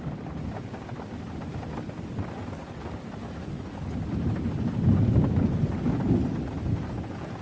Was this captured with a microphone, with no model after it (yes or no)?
yes